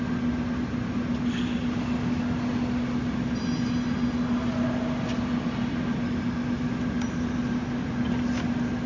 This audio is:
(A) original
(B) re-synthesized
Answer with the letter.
A